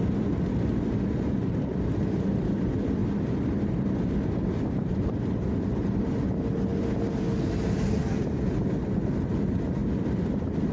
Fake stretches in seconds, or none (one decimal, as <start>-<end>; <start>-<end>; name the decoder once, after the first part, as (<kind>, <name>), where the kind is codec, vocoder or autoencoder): 3.0-3.9 (vocoder, BigVGAN v2); 9.8-10.7